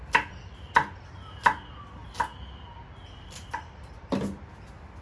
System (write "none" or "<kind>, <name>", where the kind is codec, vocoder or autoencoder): none